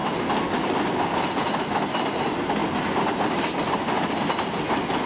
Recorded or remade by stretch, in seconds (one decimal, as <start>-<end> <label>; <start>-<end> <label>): 0.0-5.1 recorded